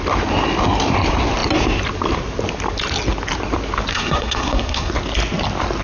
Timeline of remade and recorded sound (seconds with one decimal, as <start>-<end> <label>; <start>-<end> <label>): 0.0-3.9 recorded; 3.9-4.9 remade; 4.9-5.8 recorded